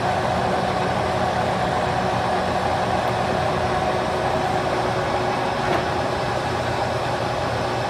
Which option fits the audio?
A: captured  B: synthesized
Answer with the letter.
A